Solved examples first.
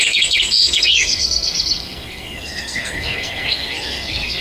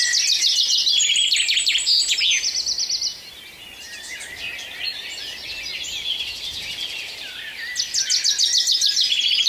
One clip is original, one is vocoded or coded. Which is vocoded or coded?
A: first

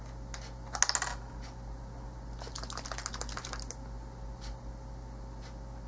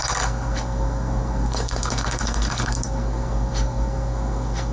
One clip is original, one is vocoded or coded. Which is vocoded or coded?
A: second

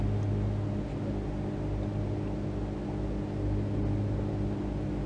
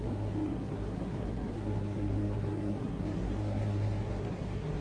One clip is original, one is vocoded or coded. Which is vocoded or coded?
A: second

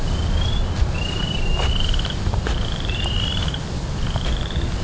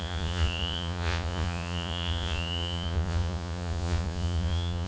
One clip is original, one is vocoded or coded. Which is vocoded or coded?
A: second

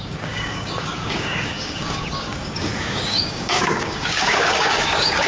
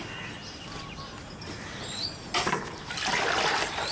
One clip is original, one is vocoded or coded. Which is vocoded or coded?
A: first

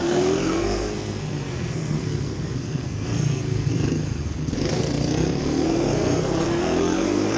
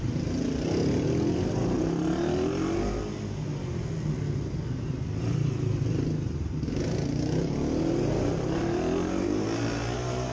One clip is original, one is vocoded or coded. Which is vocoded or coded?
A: first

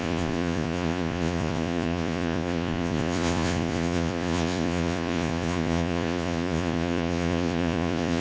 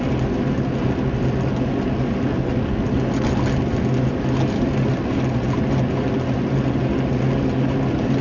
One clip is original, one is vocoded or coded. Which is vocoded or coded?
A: first